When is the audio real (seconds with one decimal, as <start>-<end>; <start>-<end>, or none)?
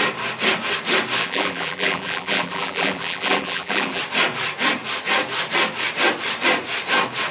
0.0-1.2; 4.0-7.3